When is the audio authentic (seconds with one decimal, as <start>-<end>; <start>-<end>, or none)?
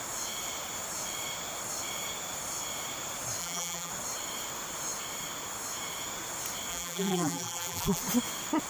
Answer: 0.0-3.4; 3.9-6.7; 8.0-8.7